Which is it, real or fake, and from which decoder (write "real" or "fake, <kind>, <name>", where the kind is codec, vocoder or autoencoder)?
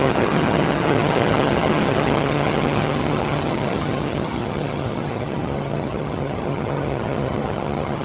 fake, vocoder, HiFi-GAN